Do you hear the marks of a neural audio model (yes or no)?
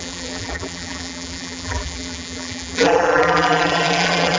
yes